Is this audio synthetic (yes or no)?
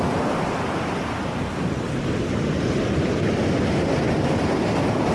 no